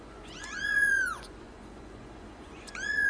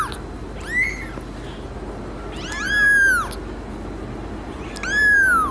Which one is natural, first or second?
second